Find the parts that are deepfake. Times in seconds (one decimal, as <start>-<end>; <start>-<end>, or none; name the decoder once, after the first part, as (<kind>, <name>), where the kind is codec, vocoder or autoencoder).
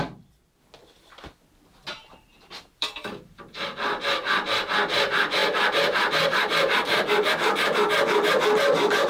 2.0-3.2 (vocoder, BigVGAN v2); 5.4-7.3